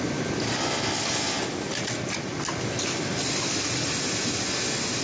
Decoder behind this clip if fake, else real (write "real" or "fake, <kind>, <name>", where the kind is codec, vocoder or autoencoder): real